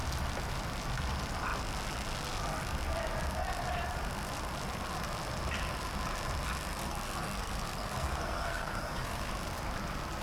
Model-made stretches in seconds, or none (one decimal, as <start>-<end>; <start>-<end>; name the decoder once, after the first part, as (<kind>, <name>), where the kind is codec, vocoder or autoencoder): 6.8-9.3 (codec, SNAC)